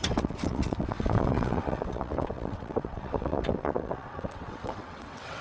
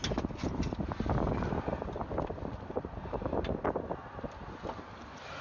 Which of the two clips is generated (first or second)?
first